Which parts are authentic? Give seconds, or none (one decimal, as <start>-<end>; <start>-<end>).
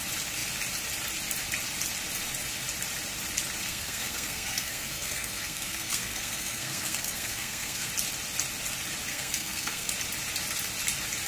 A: 0.0-3.7; 7.9-9.1; 9.9-11.3